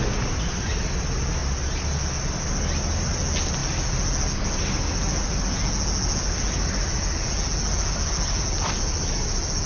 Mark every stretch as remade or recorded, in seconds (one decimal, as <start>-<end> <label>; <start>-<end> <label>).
0.0-9.7 recorded